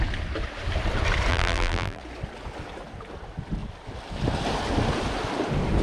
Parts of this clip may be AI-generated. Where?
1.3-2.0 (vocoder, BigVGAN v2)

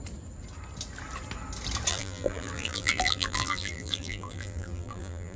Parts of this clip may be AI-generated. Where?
1.9-5.4 (vocoder, BigVGAN v2)

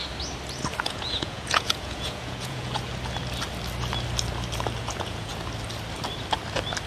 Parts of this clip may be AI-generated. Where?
0.8-2.9 (vocoder, Vocos); 4.8-5.3

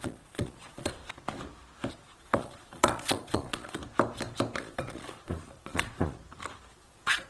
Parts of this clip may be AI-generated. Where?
0.0-1.0 (vocoder, Vocos); 1.9-3.8; 4.6-6.2; 6.7-7.3

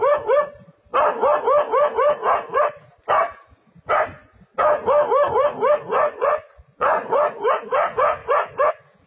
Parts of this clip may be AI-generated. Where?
5.9-7.3 (vocoder, Vocos)